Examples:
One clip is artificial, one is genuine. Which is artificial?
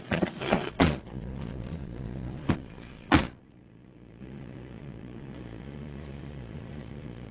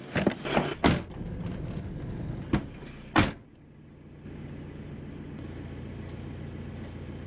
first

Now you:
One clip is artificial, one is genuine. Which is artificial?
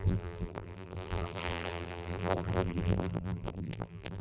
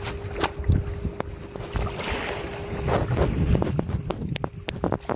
first